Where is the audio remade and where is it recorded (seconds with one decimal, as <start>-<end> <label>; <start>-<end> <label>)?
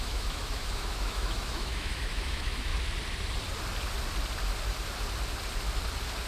0.0-2.7 remade; 2.7-6.3 recorded